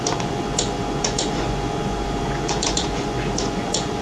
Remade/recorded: remade